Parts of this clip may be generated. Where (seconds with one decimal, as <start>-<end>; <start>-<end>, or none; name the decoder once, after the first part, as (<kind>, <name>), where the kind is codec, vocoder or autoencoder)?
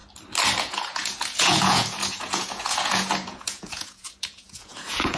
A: 0.6-5.2 (vocoder, Vocos)